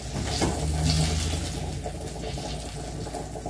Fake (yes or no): no